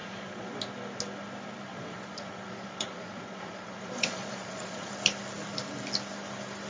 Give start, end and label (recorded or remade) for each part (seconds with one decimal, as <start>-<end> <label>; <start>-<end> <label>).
0.0-0.6 remade; 0.6-1.7 recorded; 1.7-4.9 remade; 4.9-6.7 recorded